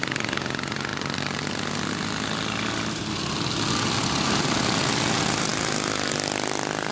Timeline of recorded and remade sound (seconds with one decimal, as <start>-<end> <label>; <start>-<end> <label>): 0.0-6.9 recorded

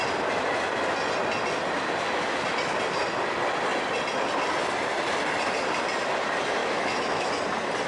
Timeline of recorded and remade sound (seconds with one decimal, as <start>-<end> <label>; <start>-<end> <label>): 0.0-6.6 recorded; 6.6-7.3 remade; 7.3-7.9 recorded

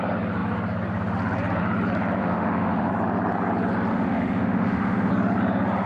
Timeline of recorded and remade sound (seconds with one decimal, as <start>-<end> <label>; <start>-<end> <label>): 0.0-2.2 recorded; 2.2-2.9 remade; 2.9-3.9 recorded; 3.9-5.1 remade; 5.1-5.9 recorded